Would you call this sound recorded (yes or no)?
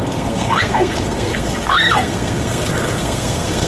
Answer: no